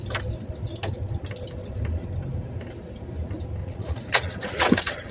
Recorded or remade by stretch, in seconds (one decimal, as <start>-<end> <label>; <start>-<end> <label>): 0.0-3.6 recorded; 3.6-5.1 remade